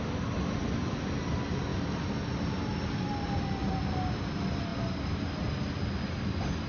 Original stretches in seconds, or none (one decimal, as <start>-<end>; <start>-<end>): 0.0-6.7